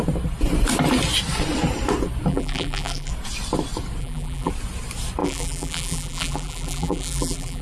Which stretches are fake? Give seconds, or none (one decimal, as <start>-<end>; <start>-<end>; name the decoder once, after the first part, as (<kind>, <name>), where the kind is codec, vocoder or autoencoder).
2.3-3.1 (vocoder, BigVGAN v2); 4.0-4.5; 5.2-7.6